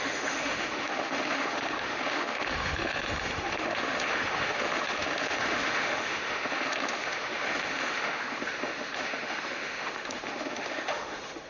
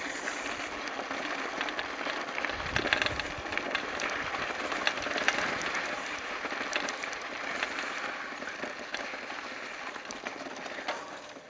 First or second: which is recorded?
second